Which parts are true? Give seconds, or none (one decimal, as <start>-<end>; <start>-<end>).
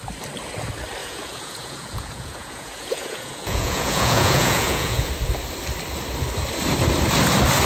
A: 0.0-1.0; 5.1-7.7